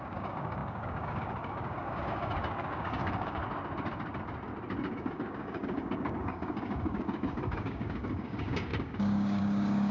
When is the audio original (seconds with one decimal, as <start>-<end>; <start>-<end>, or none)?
3.4-4.9